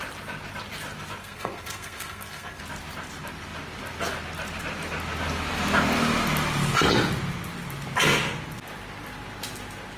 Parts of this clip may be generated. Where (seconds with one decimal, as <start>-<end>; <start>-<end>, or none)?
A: 1.2-2.6